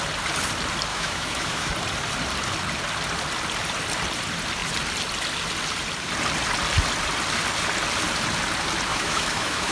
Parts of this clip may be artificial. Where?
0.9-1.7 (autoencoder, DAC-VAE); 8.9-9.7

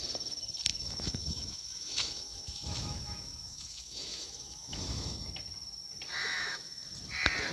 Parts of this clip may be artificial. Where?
0.7-5.2 (autoencoder, DAC-VAE); 6.2-6.8

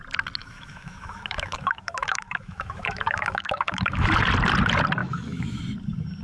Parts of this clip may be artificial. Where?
0.4-4.1 (autoencoder, DAC-VAE); 5.0-5.6

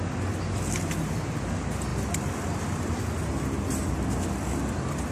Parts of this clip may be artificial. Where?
none

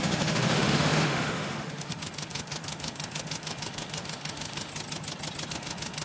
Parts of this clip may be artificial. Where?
0.0-4.7 (autoencoder, DAC-VAE); 5.5-6.0

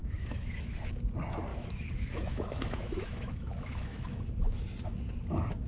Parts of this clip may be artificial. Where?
0.0-0.9 (autoencoder, DAC-VAE); 1.5-4.2

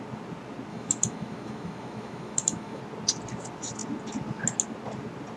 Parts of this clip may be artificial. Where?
0.7-2.8 (autoencoder, DAC-VAE)